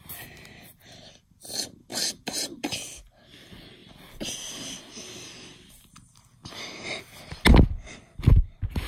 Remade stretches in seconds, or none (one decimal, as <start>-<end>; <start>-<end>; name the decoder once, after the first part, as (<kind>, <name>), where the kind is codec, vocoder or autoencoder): 1.9-2.7 (vocoder, BigVGAN v2)